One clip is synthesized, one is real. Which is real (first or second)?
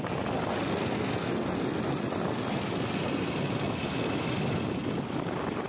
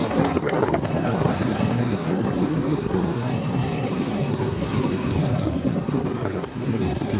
first